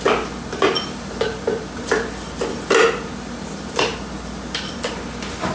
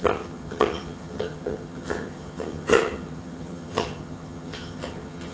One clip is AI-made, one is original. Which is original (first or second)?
first